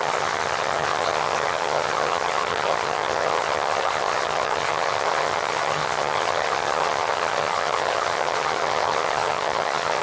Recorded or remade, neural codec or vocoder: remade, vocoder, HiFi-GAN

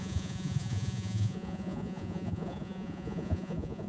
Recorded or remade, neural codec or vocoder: remade, vocoder, Vocos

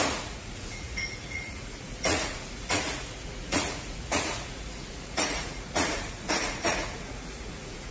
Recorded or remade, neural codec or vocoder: remade, vocoder, Vocos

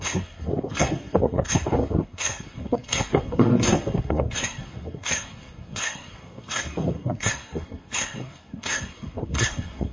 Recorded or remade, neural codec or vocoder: remade, codec, SNAC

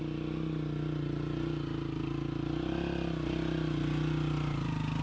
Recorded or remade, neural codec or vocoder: recorded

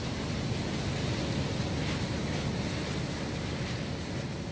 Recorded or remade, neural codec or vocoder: recorded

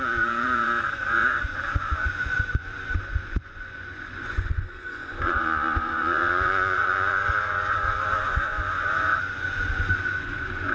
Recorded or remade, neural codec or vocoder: remade, vocoder, Vocos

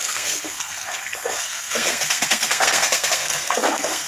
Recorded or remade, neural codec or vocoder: remade, codec, SNAC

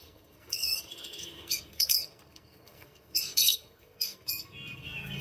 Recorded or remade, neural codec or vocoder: remade, codec, SNAC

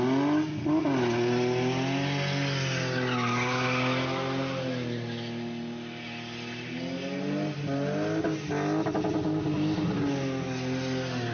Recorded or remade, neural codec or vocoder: recorded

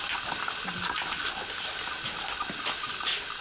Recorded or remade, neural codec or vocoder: recorded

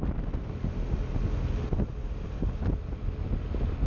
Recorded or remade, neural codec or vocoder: recorded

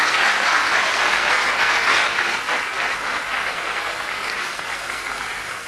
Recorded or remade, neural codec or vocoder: remade, codec, SNAC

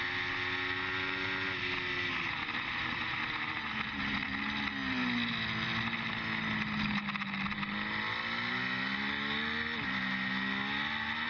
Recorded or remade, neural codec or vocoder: recorded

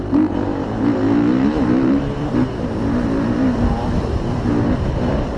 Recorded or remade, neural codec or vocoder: remade, vocoder, BigVGAN v2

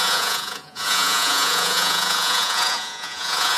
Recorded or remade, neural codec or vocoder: remade, vocoder, Vocos